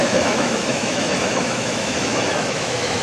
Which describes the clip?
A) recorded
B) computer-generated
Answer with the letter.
B